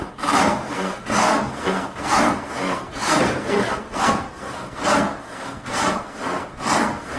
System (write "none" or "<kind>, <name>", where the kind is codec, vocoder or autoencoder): codec, SNAC